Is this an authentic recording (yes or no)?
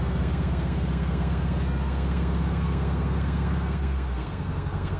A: no